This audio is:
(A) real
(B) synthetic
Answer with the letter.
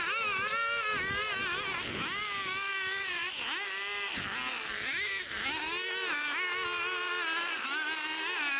A